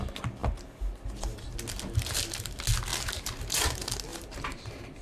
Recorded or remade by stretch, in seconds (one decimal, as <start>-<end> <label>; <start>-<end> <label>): 0.0-4.1 recorded; 4.1-5.0 remade